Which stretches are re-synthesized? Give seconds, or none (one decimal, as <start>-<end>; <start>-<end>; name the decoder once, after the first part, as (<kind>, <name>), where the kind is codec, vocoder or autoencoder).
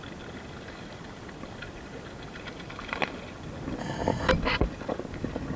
3.8-4.3 (codec, DAC)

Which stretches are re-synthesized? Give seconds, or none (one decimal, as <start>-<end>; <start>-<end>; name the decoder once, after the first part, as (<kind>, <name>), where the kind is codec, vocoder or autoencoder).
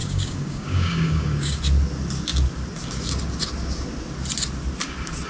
0.0-1.6 (codec, DAC)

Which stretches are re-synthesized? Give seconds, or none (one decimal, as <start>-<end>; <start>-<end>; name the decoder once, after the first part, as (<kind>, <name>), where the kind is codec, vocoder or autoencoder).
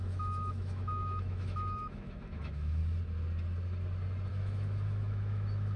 0.0-2.8 (autoencoder, DAC-VAE); 4.3-5.8